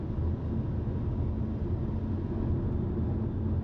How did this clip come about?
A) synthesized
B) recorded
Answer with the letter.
B